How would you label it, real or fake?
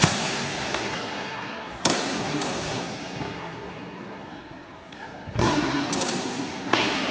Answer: fake